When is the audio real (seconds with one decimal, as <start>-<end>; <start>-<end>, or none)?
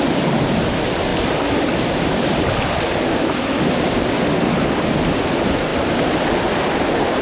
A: 0.0-1.1; 2.8-7.2